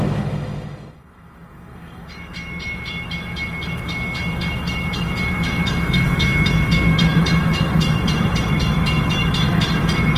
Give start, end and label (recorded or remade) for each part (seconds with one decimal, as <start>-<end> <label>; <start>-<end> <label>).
0.0-10.2 remade